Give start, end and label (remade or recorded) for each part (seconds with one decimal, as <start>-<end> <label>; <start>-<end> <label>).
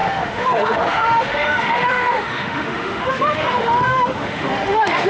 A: 0.0-5.1 remade